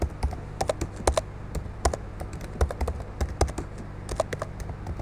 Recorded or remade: recorded